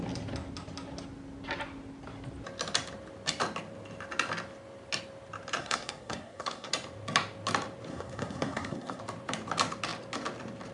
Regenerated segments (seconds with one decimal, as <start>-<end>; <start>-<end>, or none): 5.6-6.7; 7.9-9.0